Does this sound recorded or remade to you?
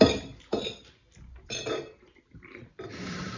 recorded